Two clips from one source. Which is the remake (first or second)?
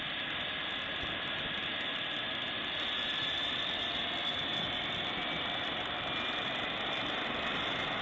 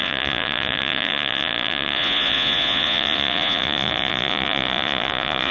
second